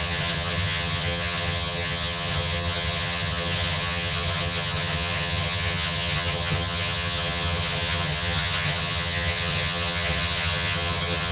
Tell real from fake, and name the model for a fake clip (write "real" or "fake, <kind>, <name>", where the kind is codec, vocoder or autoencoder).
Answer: fake, vocoder, HiFi-GAN